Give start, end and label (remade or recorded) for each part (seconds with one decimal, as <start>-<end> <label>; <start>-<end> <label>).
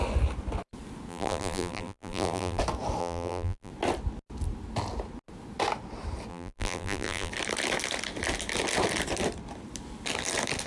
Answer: 0.0-1.1 recorded; 1.1-2.6 remade; 2.6-3.0 recorded; 3.0-3.7 remade; 3.7-6.3 recorded; 6.3-7.3 remade; 7.3-10.7 recorded